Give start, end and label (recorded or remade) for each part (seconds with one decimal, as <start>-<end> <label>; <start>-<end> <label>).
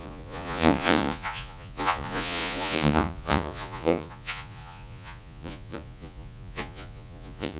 0.0-7.6 remade